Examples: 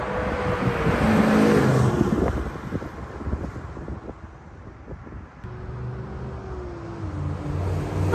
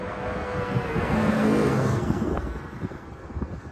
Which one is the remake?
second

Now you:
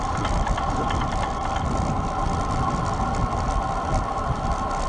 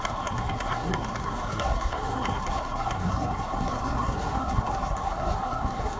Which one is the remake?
second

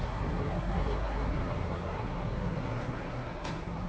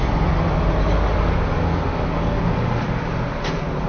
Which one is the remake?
first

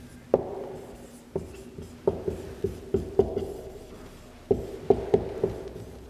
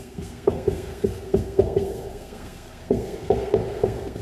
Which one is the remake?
second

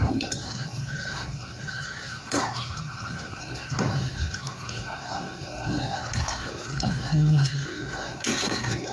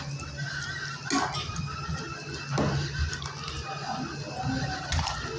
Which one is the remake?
first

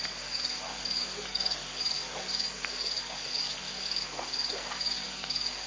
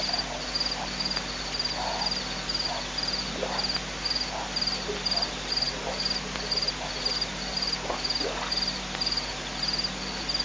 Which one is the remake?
first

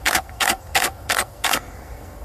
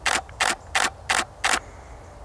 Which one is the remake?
first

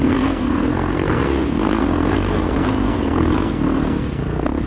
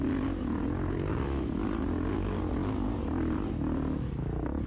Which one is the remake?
first